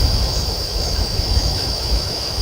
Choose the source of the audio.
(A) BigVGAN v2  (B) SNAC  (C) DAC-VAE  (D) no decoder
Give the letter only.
C